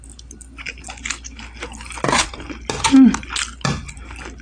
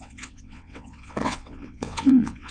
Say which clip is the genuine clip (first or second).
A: first